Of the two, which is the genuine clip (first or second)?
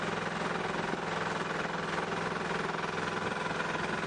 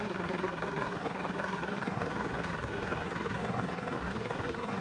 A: first